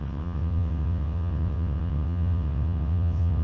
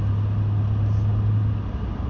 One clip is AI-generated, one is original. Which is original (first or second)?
second